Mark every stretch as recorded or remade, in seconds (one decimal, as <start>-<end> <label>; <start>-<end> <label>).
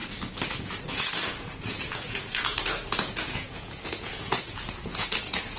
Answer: 0.0-0.6 recorded; 0.6-5.6 remade